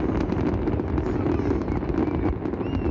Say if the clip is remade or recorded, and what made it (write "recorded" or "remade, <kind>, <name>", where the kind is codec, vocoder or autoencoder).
recorded